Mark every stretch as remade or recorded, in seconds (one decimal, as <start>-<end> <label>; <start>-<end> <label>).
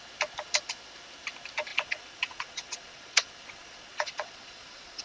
0.0-1.7 recorded; 1.7-5.0 remade